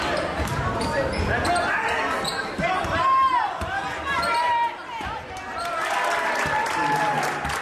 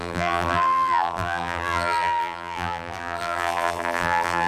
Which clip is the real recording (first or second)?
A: first